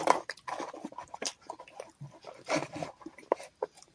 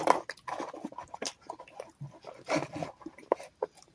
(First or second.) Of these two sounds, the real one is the second